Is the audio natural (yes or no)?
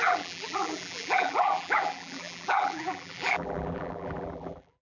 no